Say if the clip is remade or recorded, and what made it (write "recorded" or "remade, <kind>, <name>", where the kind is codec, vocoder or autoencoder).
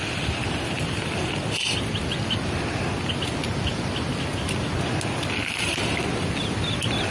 recorded